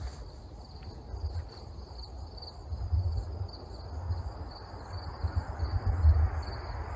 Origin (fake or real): real